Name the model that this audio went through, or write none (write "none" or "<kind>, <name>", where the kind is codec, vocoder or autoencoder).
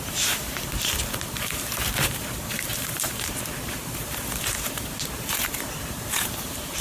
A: vocoder, BigVGAN v2